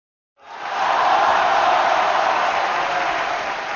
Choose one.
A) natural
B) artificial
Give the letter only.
A